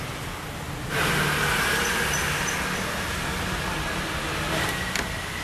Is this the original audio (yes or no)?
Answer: yes